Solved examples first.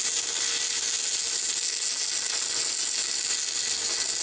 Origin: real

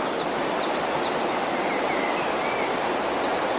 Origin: real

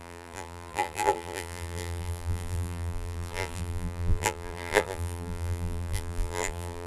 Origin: fake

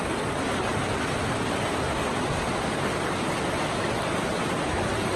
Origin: real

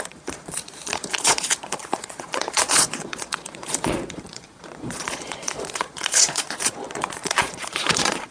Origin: fake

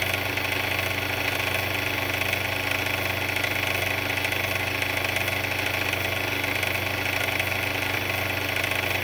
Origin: real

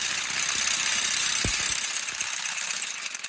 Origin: real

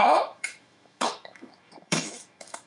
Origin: fake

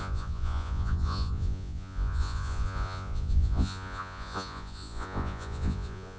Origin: fake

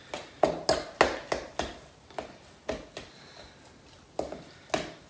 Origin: real